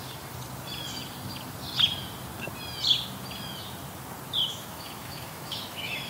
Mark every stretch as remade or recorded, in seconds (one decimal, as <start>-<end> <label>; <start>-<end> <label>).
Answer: 0.0-4.5 recorded; 4.5-6.1 remade